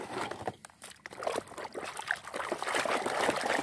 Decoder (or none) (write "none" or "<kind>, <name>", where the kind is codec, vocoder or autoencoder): none